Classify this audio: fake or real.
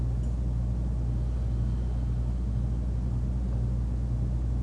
real